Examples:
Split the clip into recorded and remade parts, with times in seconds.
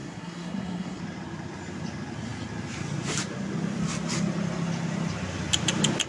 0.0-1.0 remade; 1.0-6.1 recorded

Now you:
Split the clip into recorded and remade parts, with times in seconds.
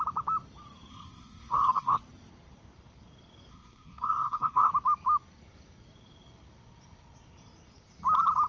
0.0-0.9 recorded; 0.9-2.0 remade; 2.0-3.5 recorded; 3.5-4.7 remade; 4.7-8.5 recorded